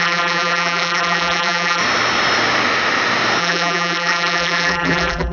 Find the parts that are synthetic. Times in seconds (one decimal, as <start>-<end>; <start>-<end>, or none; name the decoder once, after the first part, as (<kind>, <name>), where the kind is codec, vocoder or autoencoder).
0.0-1.8 (vocoder, BigVGAN v2); 3.4-5.3